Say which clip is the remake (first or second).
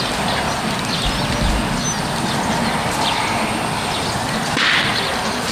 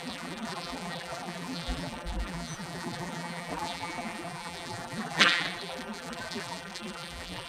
second